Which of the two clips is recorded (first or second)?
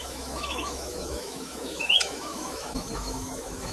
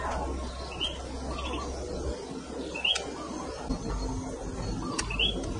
second